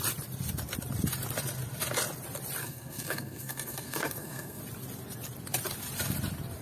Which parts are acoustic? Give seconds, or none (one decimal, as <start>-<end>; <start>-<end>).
0.0-2.6; 4.6-6.6